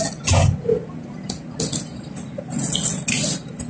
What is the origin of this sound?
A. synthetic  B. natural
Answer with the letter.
B